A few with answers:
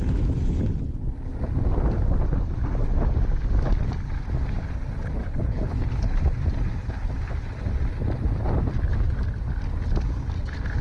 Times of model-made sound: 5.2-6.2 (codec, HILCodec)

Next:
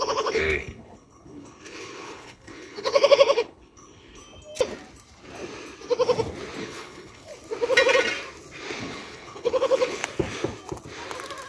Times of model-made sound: 0.0-4.2 (codec, HILCodec); 6.6-7.3; 8.8-10.0

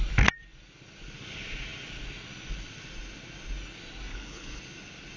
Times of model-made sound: 4.1-4.6 (codec, HILCodec)

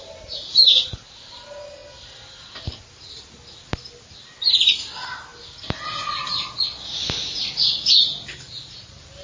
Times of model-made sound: none

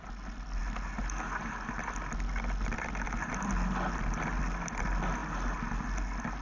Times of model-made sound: none

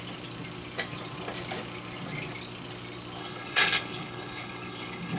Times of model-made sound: 3.2-5.2 (codec, HILCodec)

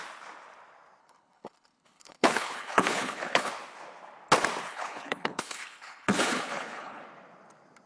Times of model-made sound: 1.0-3.5 (codec, HILCodec); 4.7-7.0